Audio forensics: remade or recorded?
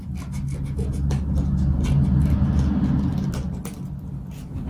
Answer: recorded